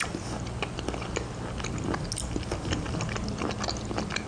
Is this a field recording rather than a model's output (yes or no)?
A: yes